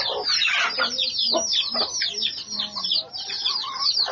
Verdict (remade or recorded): recorded